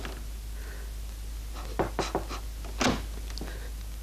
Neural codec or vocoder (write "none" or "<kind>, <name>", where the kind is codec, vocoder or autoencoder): none